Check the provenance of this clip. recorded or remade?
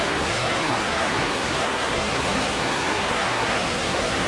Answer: remade